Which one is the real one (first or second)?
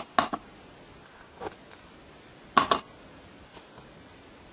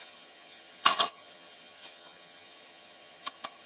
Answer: first